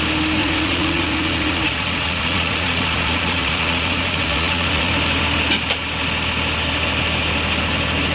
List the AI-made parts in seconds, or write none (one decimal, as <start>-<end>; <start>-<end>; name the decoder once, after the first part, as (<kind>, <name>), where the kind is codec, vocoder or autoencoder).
0.4-4.9 (vocoder, Vocos)